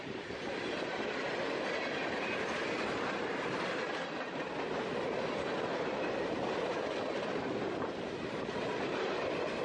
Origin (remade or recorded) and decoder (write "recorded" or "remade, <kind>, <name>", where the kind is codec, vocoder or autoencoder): recorded